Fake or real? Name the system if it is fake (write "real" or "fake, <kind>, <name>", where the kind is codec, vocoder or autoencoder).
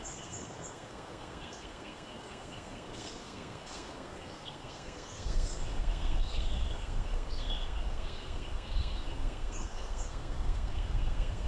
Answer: fake, codec, SNAC